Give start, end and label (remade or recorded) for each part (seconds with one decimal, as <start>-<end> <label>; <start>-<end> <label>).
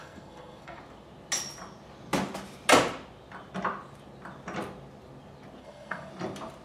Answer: 0.0-0.8 remade; 0.8-5.6 recorded; 5.6-6.1 remade; 6.1-6.6 recorded